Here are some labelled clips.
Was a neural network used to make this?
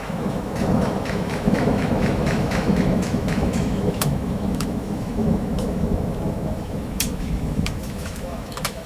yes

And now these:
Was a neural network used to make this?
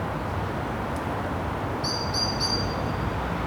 no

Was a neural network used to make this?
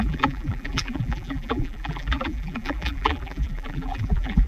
yes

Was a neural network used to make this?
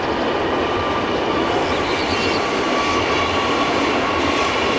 no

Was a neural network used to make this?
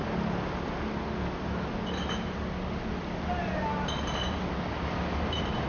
no